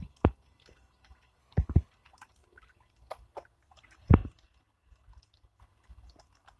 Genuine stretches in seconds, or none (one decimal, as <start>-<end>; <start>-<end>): 0.0-1.4; 1.9-6.6